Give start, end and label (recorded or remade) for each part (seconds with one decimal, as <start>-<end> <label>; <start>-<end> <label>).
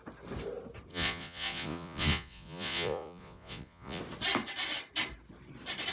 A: 0.0-0.9 recorded; 0.9-4.0 remade; 4.0-5.9 recorded